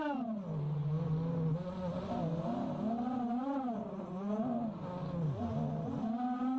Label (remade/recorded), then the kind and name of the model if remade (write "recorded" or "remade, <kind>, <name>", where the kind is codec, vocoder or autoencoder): recorded